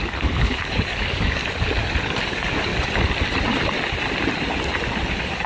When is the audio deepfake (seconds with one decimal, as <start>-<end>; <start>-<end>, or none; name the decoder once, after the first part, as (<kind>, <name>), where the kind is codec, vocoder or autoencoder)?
0.0-1.4 (codec, DAC); 2.0-2.7; 5.1-5.5